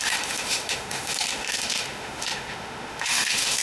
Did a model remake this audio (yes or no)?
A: yes